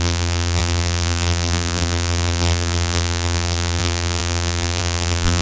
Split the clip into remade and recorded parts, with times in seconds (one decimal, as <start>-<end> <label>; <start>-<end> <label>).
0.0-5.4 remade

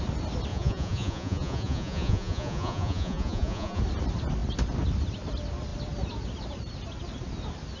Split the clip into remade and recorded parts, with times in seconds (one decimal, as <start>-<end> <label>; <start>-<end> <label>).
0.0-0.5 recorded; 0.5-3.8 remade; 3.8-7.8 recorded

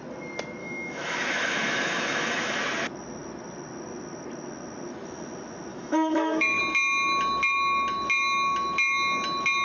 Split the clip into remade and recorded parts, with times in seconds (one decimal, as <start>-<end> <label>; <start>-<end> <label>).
0.0-0.6 recorded; 0.6-2.6 remade; 2.6-5.7 recorded; 5.7-6.6 remade; 6.6-9.6 recorded

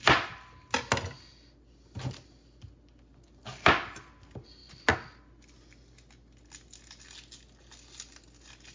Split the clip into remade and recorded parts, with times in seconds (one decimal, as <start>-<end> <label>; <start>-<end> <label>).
0.0-8.7 recorded